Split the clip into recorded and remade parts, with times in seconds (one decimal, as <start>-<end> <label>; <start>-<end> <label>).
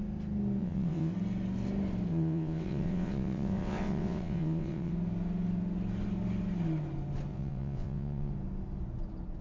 0.0-0.6 recorded; 0.6-1.1 remade; 1.1-2.1 recorded; 2.1-4.9 remade; 4.9-7.3 recorded; 7.3-8.3 remade; 8.3-9.4 recorded